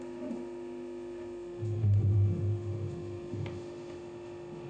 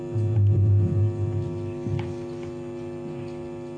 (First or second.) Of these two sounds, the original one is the second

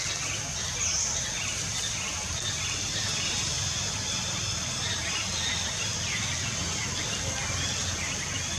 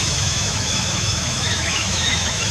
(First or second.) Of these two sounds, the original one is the first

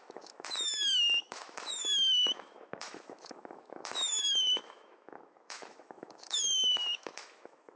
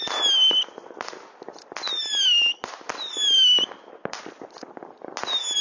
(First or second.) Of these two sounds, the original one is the second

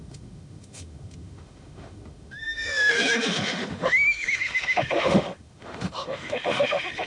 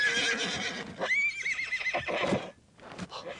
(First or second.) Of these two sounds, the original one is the second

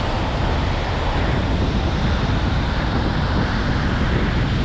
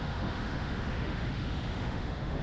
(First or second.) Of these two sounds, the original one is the first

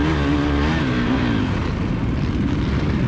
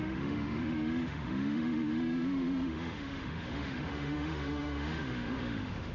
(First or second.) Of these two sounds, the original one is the first